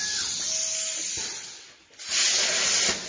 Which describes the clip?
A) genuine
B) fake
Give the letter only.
A